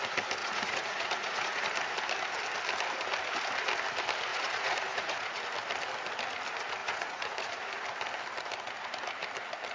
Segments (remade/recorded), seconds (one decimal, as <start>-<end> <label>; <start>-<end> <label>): 0.0-0.4 recorded; 0.4-1.6 remade; 1.6-4.3 recorded; 4.3-5.4 remade; 5.4-6.8 recorded; 6.8-7.5 remade; 7.5-9.7 recorded